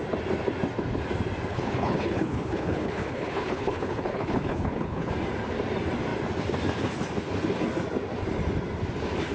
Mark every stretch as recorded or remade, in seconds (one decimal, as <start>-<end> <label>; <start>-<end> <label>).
0.0-1.5 recorded; 1.5-5.1 remade; 5.1-9.3 recorded